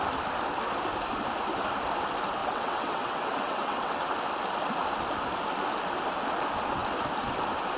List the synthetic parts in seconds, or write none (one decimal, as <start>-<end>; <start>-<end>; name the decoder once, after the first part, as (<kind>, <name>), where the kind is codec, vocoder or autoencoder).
2.4-4.0 (vocoder, WaveNeXt)